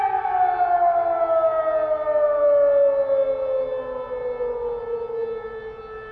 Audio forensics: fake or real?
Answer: real